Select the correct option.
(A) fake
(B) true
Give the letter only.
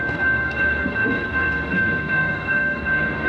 A